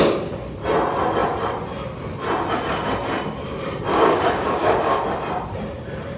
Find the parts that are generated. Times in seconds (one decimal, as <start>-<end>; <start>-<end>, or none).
3.9-5.0